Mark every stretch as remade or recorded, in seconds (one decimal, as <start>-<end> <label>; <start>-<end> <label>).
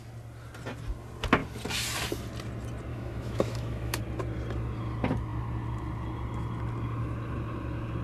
0.0-2.9 recorded; 2.9-4.0 remade; 4.0-8.0 recorded